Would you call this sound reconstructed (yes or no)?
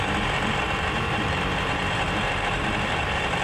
yes